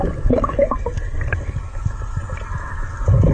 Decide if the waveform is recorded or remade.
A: recorded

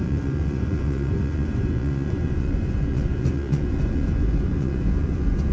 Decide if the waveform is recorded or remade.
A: remade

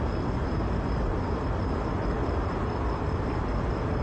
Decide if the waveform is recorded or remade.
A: recorded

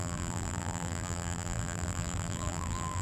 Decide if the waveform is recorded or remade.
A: remade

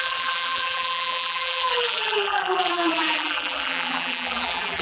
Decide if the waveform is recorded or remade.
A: remade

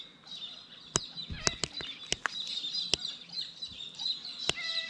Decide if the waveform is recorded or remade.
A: recorded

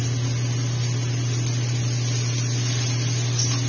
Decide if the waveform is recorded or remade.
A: recorded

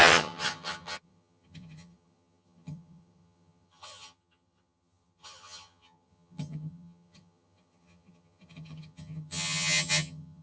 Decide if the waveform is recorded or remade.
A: remade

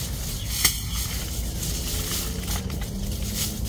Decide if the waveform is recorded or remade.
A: recorded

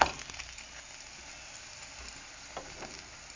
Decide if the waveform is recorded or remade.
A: recorded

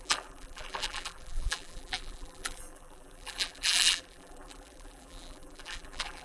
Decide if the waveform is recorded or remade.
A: remade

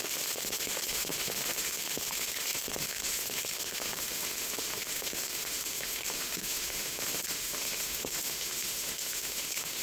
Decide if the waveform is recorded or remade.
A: remade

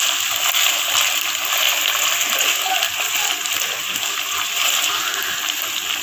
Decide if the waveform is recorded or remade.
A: recorded